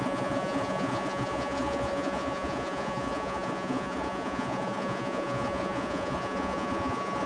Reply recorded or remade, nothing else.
remade